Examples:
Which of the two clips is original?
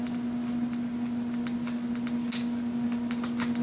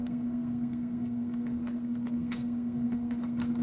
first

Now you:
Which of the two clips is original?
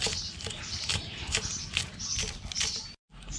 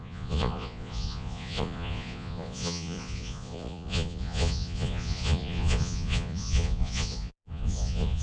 first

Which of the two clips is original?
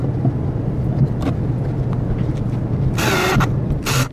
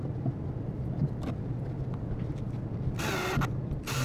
first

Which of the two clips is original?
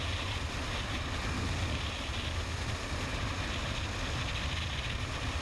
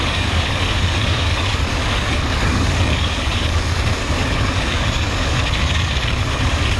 first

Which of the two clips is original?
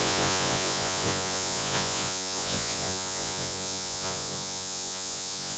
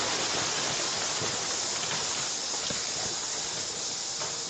second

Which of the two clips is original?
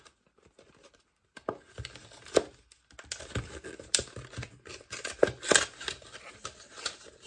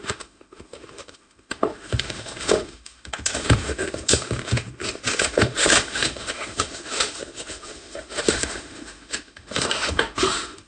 first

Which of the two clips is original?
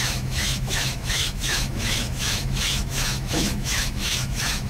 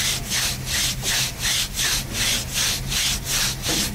second